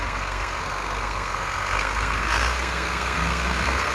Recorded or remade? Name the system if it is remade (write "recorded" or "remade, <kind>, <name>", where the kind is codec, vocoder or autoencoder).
remade, codec, SNAC